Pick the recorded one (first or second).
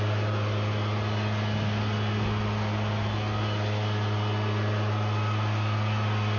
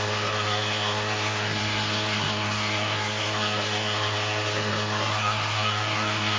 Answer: first